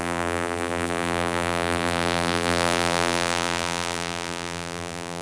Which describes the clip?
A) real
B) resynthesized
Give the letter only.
B